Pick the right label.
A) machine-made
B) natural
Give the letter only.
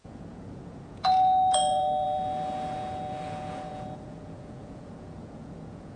A